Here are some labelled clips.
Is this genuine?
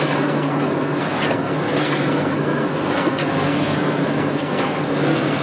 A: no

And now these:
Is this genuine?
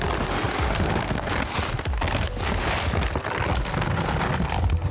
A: yes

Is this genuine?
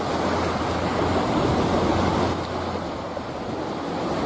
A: yes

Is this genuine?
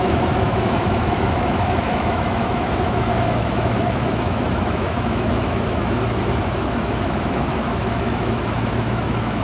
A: no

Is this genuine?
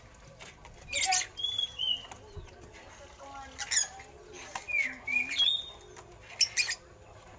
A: yes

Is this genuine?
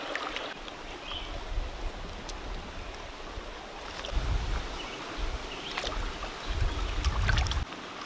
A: yes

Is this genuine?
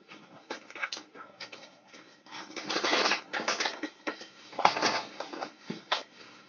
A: no